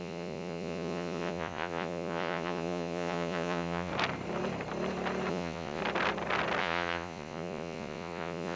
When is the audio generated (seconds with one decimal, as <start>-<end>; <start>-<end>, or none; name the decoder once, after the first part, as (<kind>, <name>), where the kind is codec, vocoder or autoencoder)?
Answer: 0.0-3.9 (vocoder, Vocos); 5.3-5.8; 6.6-8.6